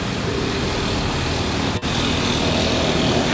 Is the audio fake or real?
real